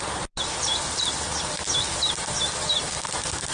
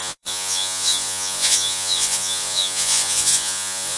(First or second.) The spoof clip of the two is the second